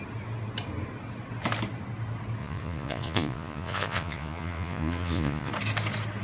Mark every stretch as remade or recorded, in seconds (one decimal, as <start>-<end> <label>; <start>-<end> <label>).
0.0-2.4 recorded; 2.4-5.5 remade; 5.5-6.2 recorded

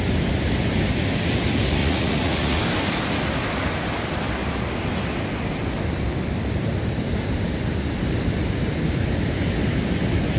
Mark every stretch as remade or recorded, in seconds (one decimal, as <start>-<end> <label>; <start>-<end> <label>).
0.0-1.8 recorded; 1.8-2.6 remade; 2.6-10.4 recorded

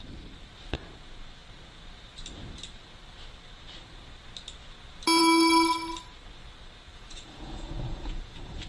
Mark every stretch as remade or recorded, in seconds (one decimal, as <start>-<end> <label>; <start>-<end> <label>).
0.0-6.9 recorded; 6.9-8.7 remade

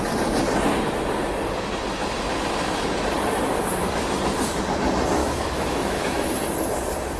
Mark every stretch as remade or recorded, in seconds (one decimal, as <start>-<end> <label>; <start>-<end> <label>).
0.0-5.2 recorded; 5.2-6.3 remade; 6.3-7.2 recorded

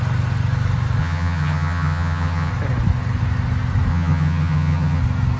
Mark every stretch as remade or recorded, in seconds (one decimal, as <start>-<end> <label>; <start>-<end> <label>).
0.0-1.0 recorded; 1.0-2.5 remade; 2.5-3.9 recorded; 3.9-5.0 remade; 5.0-5.4 recorded

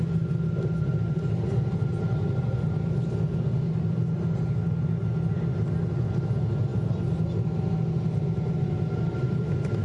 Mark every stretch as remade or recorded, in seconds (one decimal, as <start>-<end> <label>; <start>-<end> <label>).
0.0-9.8 recorded